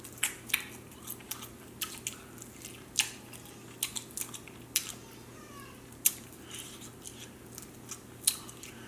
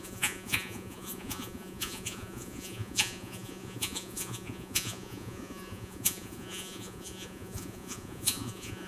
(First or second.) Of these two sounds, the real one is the first